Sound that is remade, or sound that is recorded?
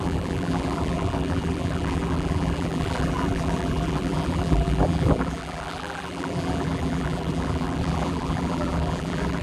remade